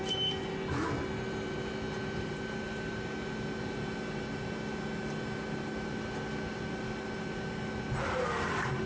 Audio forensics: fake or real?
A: real